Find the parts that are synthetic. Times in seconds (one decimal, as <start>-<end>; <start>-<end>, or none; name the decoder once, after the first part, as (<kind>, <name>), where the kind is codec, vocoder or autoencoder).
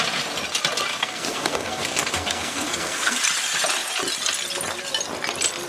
0.9-3.2 (codec, SNAC)